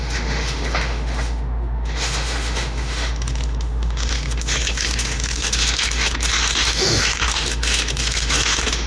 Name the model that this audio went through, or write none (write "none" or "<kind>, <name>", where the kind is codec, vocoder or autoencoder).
autoencoder, DAC-VAE